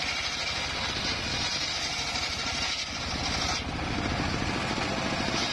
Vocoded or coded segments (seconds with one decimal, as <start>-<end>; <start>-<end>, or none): none